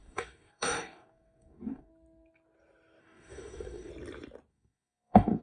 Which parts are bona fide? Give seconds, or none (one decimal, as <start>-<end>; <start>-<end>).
1.9-3.0; 3.9-4.5